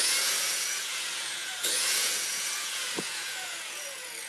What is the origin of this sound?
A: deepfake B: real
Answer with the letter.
A